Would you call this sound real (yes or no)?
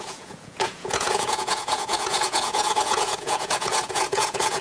no